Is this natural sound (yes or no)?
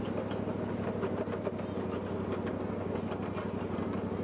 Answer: yes